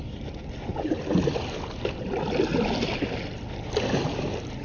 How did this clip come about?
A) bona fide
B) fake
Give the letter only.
A